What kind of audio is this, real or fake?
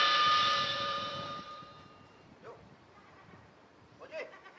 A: fake